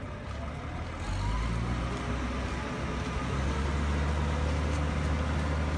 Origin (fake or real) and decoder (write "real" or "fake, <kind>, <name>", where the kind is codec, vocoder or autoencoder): real